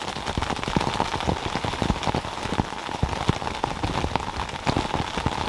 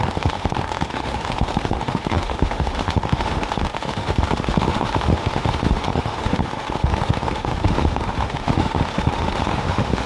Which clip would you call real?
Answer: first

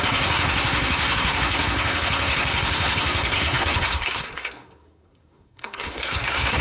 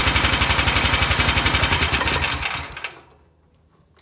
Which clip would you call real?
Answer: second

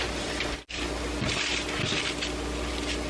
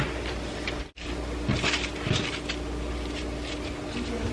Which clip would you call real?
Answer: first